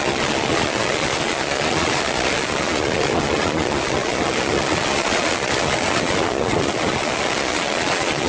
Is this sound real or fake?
fake